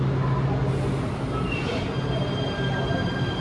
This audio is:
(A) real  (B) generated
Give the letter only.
A